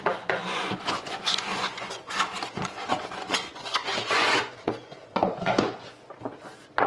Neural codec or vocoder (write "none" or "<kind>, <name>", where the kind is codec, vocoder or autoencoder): vocoder, Vocos